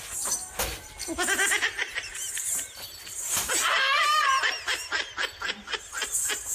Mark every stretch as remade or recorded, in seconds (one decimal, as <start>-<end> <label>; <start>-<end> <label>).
0.0-1.9 recorded; 1.9-3.5 remade; 3.5-6.5 recorded